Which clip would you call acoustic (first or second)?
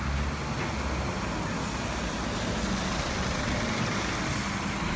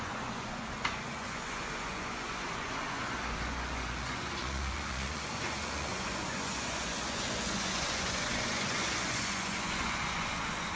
first